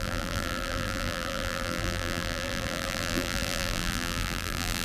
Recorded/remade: remade